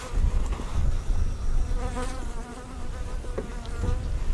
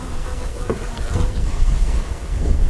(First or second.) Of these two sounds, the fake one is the second